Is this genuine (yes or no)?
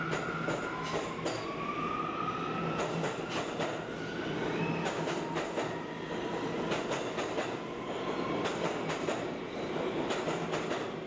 yes